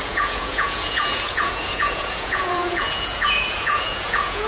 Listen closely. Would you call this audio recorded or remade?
remade